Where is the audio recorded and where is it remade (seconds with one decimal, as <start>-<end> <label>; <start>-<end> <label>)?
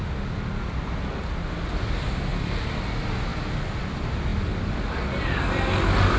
0.0-6.2 recorded